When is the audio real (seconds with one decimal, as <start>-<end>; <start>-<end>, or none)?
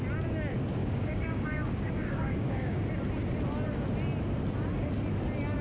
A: 0.0-0.8; 2.9-5.6